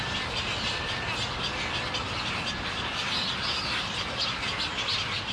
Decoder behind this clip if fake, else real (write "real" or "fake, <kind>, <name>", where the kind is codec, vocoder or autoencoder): real